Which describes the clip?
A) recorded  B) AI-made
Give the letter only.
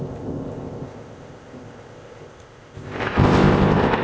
B